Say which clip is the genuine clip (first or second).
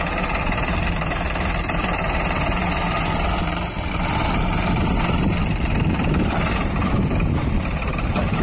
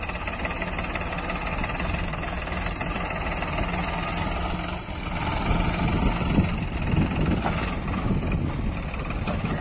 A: second